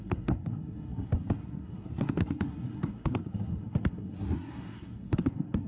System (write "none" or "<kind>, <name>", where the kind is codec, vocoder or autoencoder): codec, SNAC